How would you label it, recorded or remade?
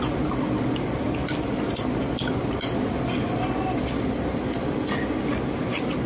recorded